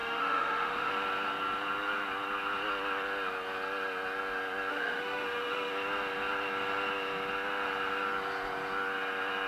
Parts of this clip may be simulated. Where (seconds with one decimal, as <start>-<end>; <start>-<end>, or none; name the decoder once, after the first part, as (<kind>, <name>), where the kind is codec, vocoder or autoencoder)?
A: 0.0-0.9 (autoencoder, DAC-VAE); 4.7-5.7